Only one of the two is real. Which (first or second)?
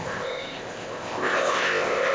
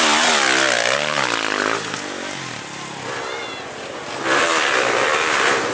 second